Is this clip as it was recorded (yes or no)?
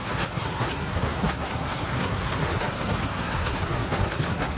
no